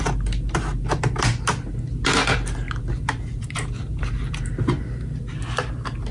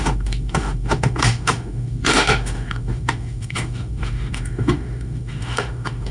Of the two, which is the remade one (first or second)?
second